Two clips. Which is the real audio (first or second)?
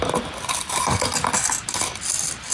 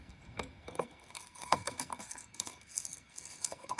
first